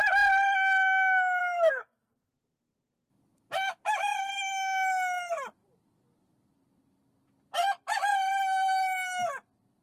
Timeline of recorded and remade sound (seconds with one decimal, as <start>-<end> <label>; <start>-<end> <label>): 0.0-1.4 recorded; 1.4-2.3 remade; 2.3-9.8 recorded